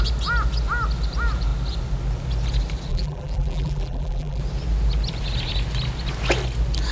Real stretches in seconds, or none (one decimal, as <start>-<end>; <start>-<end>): 0.0-2.9; 4.4-6.9